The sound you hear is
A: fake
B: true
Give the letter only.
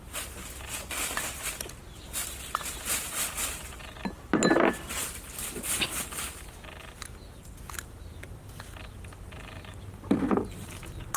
B